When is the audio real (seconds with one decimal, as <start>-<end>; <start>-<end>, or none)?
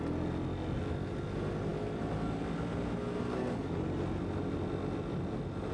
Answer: 0.0-5.7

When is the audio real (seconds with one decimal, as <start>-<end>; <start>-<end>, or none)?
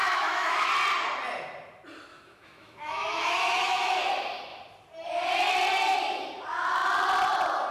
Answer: 0.7-2.1; 4.0-7.7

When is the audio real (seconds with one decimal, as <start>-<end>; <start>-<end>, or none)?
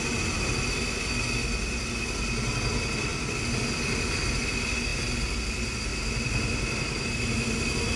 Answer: 0.0-8.0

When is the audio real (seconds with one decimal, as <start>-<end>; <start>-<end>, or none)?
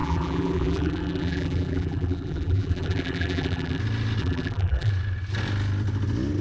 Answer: 3.8-4.2; 4.9-6.4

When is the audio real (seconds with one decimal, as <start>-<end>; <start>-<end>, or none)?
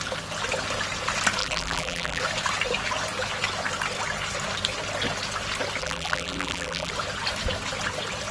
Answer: 0.0-1.4; 2.2-5.8; 6.9-8.3